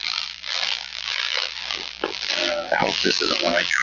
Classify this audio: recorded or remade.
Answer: remade